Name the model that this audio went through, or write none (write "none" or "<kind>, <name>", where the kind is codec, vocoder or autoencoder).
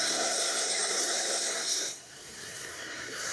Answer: codec, SNAC